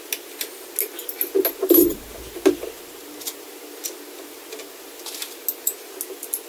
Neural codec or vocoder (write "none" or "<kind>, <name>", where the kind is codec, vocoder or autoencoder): none